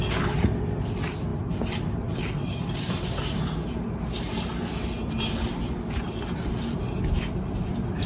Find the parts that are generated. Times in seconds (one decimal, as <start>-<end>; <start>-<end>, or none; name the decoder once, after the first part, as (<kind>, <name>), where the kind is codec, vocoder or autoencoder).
none